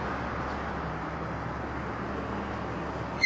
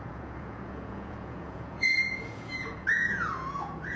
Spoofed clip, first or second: second